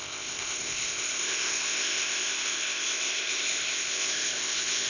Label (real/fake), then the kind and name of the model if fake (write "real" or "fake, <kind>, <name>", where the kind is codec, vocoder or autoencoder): fake, codec, ZipCodec